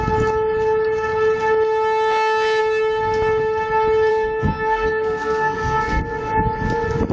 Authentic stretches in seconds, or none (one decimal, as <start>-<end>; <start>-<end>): 0.0-4.1; 6.0-7.1